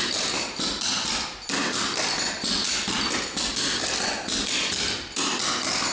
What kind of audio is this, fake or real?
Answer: real